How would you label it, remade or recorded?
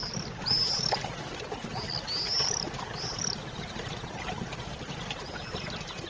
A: recorded